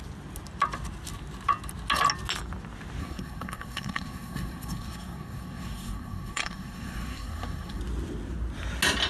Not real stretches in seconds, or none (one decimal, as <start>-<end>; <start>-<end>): 3.0-7.8